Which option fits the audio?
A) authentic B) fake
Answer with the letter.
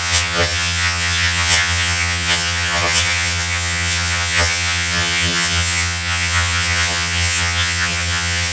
B